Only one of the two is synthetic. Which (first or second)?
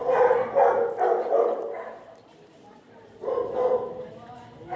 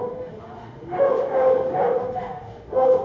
second